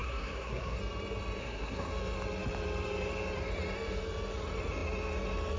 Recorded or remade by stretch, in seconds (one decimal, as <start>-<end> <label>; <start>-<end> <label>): 0.0-0.8 remade; 0.8-1.4 recorded; 1.4-1.9 remade; 1.9-5.6 recorded